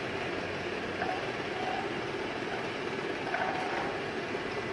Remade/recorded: recorded